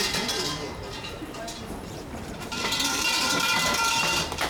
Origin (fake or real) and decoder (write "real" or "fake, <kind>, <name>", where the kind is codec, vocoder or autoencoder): fake, vocoder, BigVGAN v2